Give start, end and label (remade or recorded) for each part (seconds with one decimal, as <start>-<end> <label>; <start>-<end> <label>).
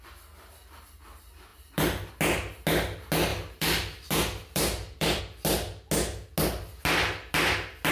0.0-1.5 recorded; 1.5-2.1 remade; 2.1-3.3 recorded; 3.3-5.2 remade; 5.2-7.9 recorded